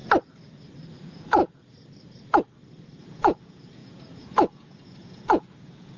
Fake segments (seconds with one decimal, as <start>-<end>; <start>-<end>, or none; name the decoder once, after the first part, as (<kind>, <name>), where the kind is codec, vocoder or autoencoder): 0.9-1.4 (vocoder, Vocos); 3.0-6.0